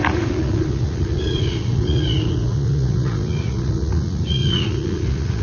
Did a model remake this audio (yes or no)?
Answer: yes